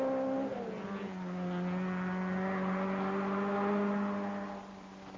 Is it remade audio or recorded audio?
recorded